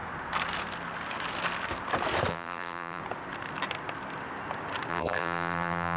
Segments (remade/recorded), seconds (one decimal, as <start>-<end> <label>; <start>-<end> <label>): 0.0-2.3 recorded; 2.3-3.0 remade; 3.0-4.9 recorded; 4.9-6.0 remade